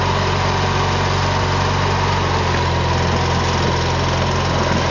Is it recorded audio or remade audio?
recorded